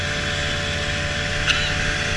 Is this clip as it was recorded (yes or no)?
yes